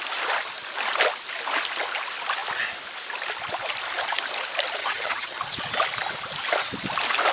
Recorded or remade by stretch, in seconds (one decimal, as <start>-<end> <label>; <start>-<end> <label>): 0.0-4.8 recorded; 4.8-5.4 remade; 5.4-7.3 recorded